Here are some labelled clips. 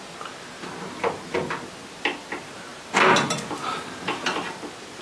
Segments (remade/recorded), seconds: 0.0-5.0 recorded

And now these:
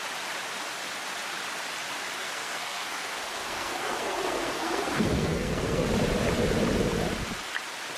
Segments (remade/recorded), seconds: 0.0-2.2 recorded; 2.2-5.9 remade; 5.9-8.0 recorded

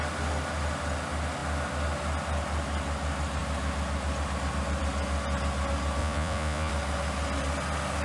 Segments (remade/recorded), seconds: 0.0-6.0 recorded; 6.0-6.7 remade; 6.7-8.0 recorded

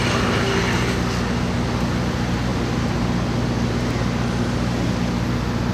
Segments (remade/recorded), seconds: 0.0-5.7 recorded

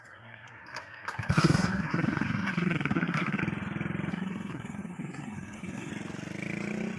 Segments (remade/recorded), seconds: 0.0-3.4 remade; 3.4-4.1 recorded; 4.1-5.9 remade; 5.9-7.0 recorded

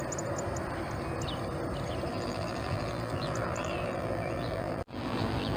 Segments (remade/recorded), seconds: 0.0-2.1 recorded; 2.1-5.6 remade

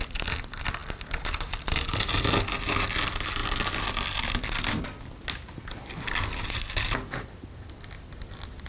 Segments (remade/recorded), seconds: 0.0-8.7 recorded

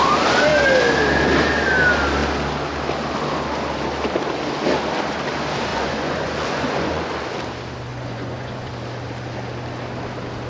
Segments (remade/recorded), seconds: 0.0-5.7 recorded; 5.7-7.1 remade; 7.1-7.9 recorded; 7.9-8.7 remade; 8.7-10.5 recorded